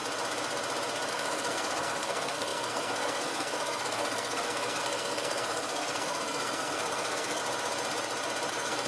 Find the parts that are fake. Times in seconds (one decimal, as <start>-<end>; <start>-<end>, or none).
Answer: 1.1-7.4; 8.5-8.9